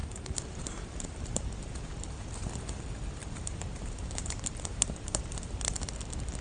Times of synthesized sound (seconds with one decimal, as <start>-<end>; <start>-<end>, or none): 0.0-2.3; 3.2-5.9

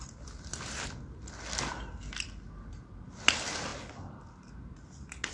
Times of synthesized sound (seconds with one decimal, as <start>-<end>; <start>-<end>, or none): none

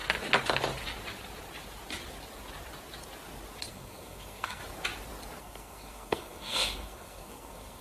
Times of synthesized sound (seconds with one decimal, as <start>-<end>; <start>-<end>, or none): 3.7-4.6; 5.4-7.8

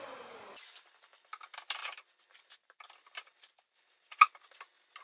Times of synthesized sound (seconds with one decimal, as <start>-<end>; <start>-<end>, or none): none

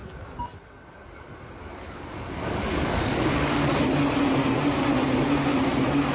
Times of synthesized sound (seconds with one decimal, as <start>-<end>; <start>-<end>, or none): 1.6-3.7

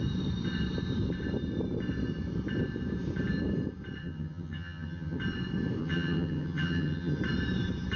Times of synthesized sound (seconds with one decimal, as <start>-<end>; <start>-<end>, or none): 4.0-5.2; 5.8-7.2